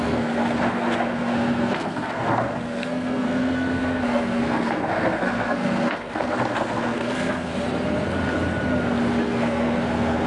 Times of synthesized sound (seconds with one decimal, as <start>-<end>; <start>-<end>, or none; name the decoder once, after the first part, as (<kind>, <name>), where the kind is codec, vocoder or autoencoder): 0.0-7.5 (codec, SNAC); 9.2-10.3